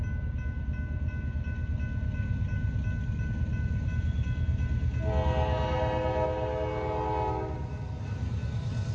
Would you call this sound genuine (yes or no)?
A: yes